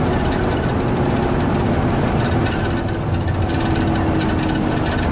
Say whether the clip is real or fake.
real